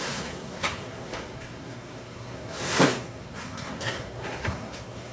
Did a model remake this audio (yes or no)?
yes